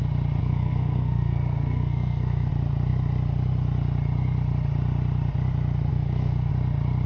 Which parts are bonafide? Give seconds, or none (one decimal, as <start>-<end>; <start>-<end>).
0.0-0.4; 2.5-5.9; 6.5-7.1